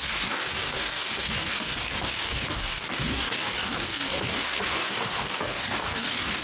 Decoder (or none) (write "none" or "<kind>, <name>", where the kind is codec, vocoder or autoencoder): codec, DAC